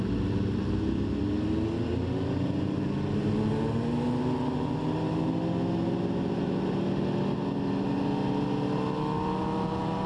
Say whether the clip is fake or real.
real